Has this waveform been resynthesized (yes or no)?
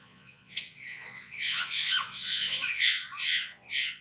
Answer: yes